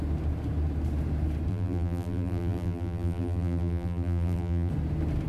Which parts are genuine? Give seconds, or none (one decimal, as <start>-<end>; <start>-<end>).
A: 0.0-1.5; 4.7-5.3